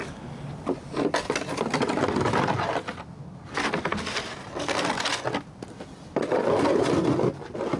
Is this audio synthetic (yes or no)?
no